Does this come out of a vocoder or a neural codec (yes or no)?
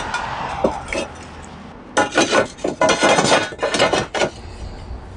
no